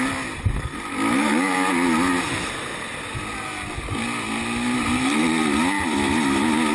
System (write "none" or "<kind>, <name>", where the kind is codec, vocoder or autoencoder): none